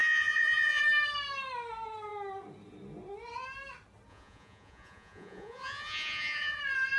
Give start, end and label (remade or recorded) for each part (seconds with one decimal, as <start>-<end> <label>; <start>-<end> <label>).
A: 0.0-0.8 remade; 0.8-4.1 recorded; 4.1-6.6 remade; 6.6-7.0 recorded